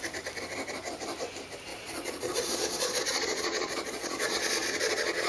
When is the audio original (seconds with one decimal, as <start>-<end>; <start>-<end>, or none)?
0.0-1.7